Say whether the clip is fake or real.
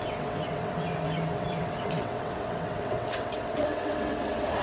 fake